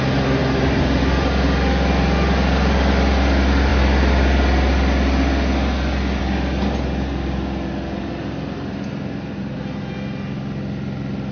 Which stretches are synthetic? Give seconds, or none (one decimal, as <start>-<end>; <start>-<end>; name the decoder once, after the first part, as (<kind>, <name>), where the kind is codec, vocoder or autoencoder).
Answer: none